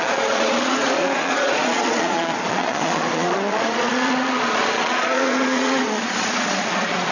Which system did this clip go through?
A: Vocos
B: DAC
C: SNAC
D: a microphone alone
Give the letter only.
A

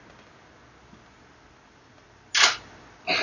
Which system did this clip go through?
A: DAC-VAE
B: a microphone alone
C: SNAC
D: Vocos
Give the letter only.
B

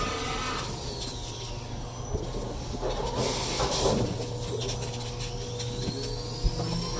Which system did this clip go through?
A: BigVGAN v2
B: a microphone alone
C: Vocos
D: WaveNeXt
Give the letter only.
B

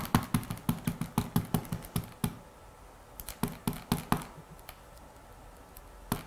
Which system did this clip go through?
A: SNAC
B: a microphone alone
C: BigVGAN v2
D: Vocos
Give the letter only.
B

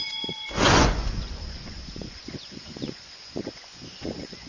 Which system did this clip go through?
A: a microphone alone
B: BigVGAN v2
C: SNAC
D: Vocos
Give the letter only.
D